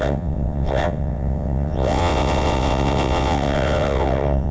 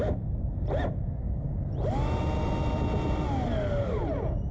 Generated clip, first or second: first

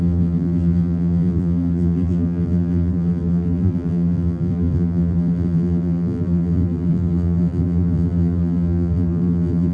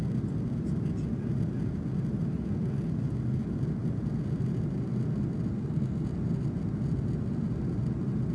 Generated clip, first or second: first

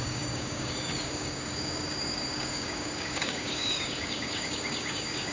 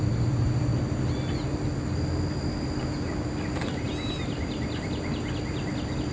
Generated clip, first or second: first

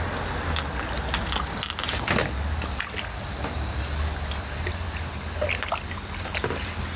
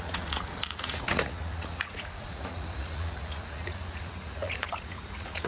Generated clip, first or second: second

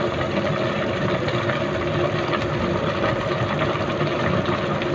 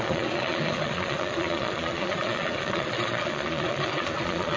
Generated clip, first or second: second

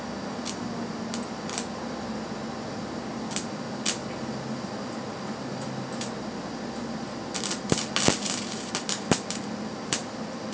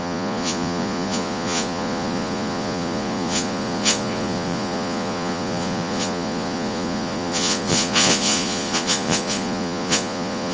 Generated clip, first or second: second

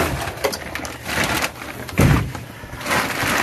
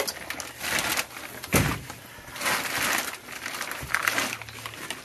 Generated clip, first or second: first